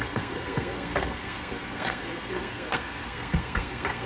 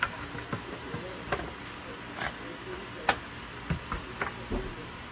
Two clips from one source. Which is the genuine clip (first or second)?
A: second